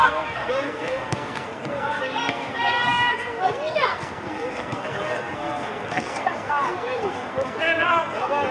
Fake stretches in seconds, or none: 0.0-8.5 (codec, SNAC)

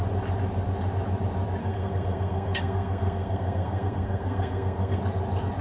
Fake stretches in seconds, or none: 1.6-5.0 (codec, SNAC)

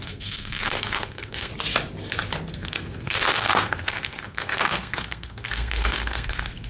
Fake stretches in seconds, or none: 0.0-1.5 (codec, SNAC); 2.5-6.7

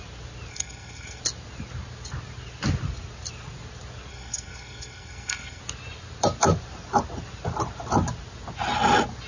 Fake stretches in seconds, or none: 0.5-1.2 (codec, SNAC); 4.1-5.6

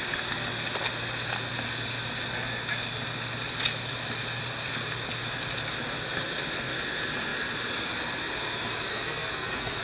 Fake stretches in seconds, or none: 8.9-9.8 (codec, SNAC)

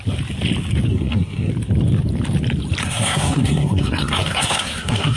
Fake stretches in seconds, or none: 0.9-1.5 (codec, SNAC); 2.8-5.2